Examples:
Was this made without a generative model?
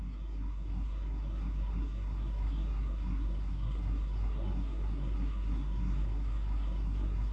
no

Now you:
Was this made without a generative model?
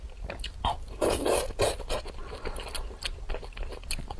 yes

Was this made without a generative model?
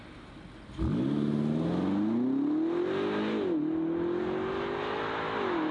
yes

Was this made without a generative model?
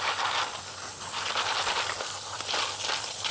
yes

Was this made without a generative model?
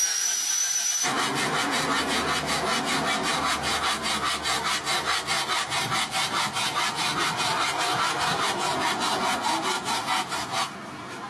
yes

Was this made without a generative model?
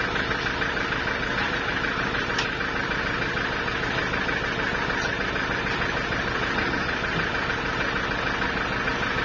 yes